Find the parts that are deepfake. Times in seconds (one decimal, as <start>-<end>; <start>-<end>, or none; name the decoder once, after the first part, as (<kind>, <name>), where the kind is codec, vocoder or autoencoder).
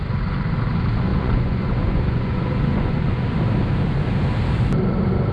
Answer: 1.1-3.4 (vocoder, Vocos)